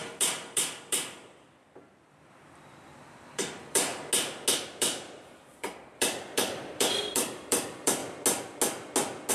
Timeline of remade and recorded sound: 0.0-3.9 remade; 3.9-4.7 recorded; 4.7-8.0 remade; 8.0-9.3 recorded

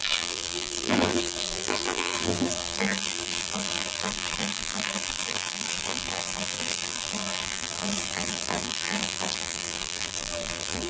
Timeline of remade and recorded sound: 0.0-10.9 remade

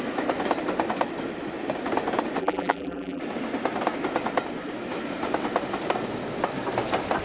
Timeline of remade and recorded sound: 0.0-2.4 recorded; 2.4-3.2 remade; 3.2-7.2 recorded

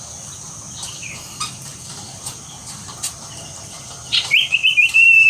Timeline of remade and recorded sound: 0.0-1.7 recorded; 1.7-5.3 remade